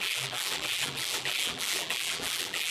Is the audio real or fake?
fake